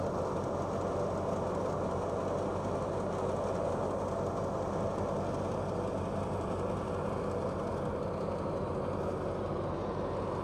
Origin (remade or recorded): recorded